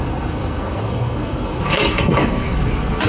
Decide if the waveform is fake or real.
fake